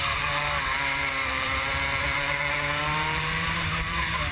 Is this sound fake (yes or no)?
yes